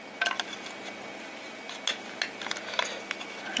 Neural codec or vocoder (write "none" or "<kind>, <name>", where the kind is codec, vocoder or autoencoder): none